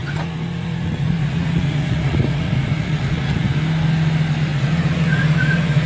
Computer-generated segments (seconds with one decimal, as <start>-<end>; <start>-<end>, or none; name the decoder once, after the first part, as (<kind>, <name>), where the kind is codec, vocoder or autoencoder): 0.0-3.5 (vocoder, Vocos); 4.5-5.9